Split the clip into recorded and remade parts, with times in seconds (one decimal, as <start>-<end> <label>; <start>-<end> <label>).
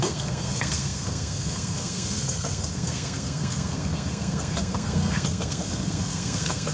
0.0-6.7 remade